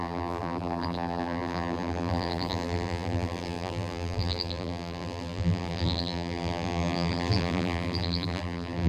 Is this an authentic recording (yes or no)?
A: no